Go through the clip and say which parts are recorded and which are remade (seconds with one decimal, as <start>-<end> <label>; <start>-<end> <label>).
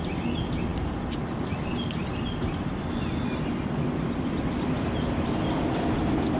0.0-6.4 recorded